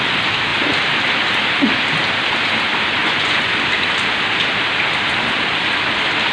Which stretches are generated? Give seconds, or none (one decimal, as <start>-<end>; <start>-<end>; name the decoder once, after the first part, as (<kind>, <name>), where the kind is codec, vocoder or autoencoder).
3.0-3.5 (vocoder, Vocos)